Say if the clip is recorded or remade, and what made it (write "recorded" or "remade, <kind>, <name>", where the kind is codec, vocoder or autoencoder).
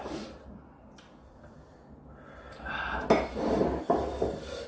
recorded